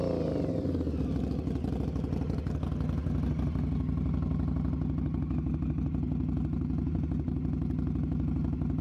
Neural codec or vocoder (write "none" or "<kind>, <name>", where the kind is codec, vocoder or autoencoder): none